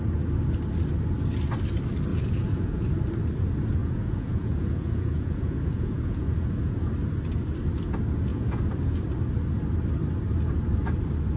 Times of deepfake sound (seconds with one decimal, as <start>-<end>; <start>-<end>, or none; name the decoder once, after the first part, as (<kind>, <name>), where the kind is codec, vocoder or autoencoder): 2.1-2.9 (vocoder, Vocos); 3.8-6.9; 8.3-9.0